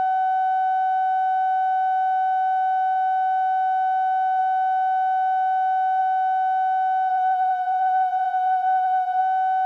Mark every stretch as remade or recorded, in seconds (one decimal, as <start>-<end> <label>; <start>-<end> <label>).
0.0-7.1 recorded; 7.1-9.2 remade; 9.2-9.7 recorded